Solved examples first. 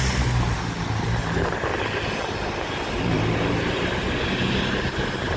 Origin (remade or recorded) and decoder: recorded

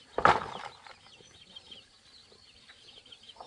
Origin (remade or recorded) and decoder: recorded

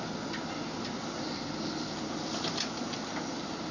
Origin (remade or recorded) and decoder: recorded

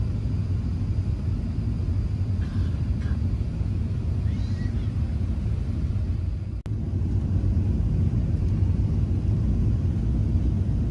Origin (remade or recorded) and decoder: recorded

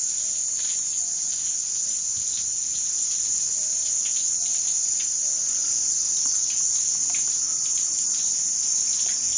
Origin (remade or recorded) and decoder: recorded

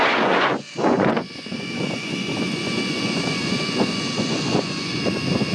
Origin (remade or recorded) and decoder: remade, vocoder, Vocos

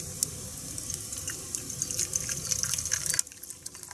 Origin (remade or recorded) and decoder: recorded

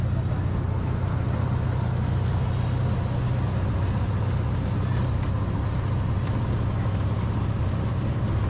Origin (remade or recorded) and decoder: recorded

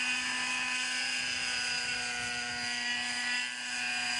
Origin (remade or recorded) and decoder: recorded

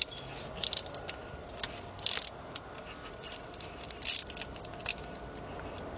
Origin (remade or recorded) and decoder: recorded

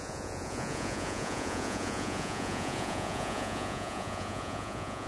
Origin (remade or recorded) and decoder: remade, vocoder, Vocos